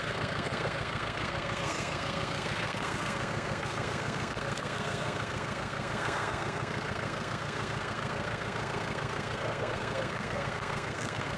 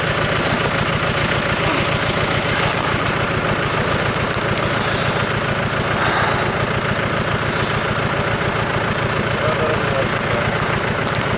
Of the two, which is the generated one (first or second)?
first